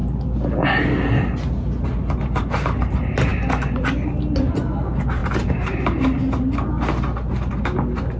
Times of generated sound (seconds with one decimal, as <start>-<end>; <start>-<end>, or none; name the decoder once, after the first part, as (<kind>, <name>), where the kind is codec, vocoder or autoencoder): none